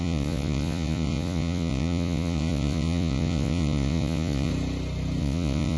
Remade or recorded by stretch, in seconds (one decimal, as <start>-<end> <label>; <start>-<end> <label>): 0.0-4.5 remade; 4.5-5.2 recorded; 5.2-5.8 remade